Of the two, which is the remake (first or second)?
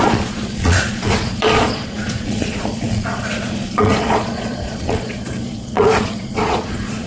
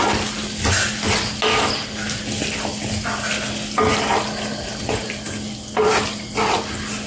first